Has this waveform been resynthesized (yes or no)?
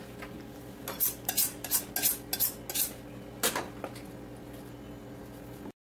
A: no